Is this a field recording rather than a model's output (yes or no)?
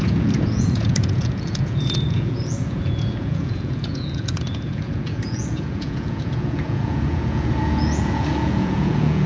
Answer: no